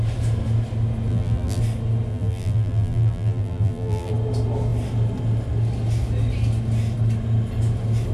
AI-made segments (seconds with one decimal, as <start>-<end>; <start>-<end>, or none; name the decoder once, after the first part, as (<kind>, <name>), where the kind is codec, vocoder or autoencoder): 1.1-1.6 (vocoder, BigVGAN v2); 2.1-4.1